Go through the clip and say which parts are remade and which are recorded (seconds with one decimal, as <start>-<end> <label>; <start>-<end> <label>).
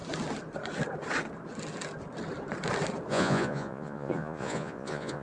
0.0-3.1 recorded; 3.1-5.2 remade